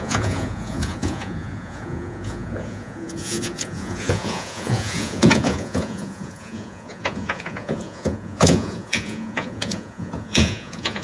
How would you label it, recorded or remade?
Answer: remade